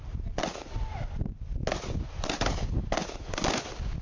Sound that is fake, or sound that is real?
real